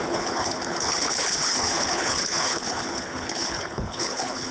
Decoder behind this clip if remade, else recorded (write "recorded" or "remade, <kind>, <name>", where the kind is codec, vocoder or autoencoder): remade, codec, HILCodec